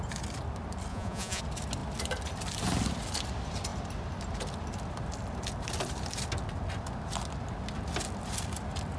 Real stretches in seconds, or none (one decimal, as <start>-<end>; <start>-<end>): 0.0-0.9; 1.4-9.0